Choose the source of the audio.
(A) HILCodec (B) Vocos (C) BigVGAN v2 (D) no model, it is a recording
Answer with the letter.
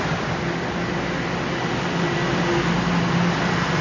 D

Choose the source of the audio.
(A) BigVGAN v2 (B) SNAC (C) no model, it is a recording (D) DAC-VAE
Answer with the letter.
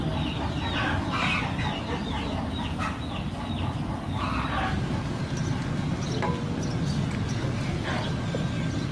C